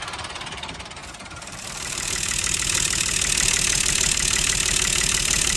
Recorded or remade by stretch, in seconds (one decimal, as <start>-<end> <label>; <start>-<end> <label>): 0.0-5.6 remade